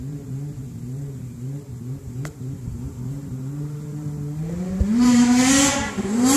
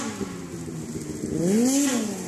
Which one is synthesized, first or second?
first